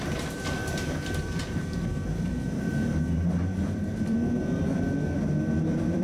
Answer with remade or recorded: remade